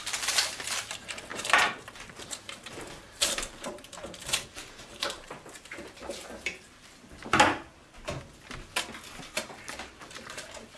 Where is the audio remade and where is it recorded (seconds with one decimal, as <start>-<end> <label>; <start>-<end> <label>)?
0.0-7.2 remade; 7.2-9.4 recorded; 9.4-10.8 remade